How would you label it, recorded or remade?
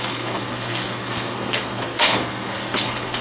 remade